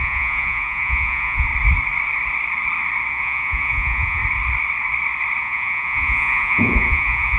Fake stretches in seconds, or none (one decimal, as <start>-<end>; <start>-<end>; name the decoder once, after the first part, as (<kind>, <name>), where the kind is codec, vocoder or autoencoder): 0.0-1.5 (vocoder, Vocos); 3.1-4.2; 5.4-7.4